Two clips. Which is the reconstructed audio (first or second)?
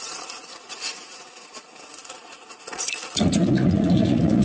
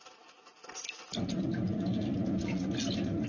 first